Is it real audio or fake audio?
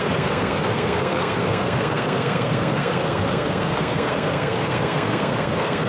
fake